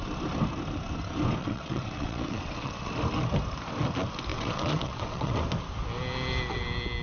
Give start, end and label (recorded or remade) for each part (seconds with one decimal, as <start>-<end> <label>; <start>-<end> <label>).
0.0-1.4 recorded; 1.4-2.9 remade; 2.9-4.3 recorded; 4.3-5.4 remade; 5.4-7.0 recorded